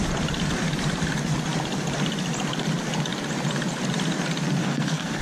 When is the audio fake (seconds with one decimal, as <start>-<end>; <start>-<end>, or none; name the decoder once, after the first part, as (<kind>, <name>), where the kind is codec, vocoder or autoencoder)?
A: 4.6-5.2 (codec, SNAC)